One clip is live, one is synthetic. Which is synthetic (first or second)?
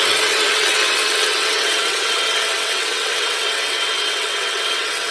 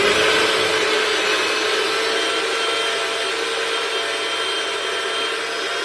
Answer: first